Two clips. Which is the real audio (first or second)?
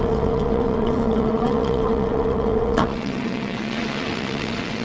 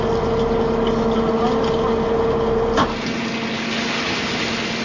second